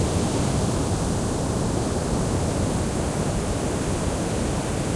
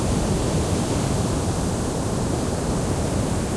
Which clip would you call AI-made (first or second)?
second